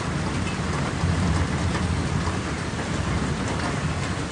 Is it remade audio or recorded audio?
recorded